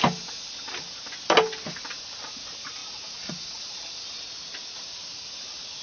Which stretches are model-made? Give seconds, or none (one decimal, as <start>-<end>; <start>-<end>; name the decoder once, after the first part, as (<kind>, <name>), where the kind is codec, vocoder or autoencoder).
none

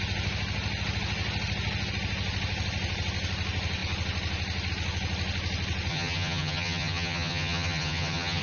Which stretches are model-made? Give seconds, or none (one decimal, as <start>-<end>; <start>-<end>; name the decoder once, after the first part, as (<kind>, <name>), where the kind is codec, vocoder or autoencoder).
5.9-8.4 (vocoder, HiFi-GAN)

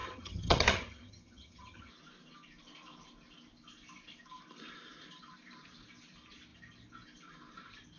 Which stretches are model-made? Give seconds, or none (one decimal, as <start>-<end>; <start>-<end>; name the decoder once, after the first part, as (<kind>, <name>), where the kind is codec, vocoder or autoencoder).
0.0-1.9 (vocoder, HiFi-GAN)

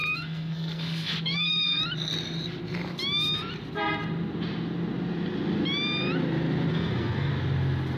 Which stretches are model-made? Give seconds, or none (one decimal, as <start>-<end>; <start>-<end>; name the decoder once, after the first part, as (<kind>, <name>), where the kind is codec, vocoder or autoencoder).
0.0-1.8 (codec, SNAC); 6.7-7.3

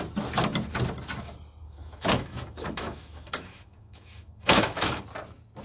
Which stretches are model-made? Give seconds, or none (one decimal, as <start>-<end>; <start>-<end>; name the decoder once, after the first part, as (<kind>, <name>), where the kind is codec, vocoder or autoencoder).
1.6-5.0 (autoencoder, DAC-VAE)

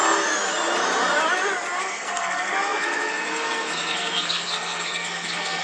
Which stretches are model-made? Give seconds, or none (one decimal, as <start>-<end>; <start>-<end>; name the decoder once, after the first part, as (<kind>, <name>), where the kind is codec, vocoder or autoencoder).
1.8-5.6 (codec, SNAC)

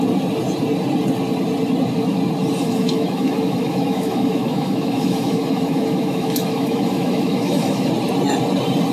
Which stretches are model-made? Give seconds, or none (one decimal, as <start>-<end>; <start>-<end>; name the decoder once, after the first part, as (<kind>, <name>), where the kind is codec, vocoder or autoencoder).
2.6-7.9 (autoencoder, DAC-VAE)

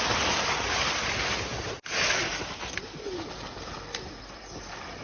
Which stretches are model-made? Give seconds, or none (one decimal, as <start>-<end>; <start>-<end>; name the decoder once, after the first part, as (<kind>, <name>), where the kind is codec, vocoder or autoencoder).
none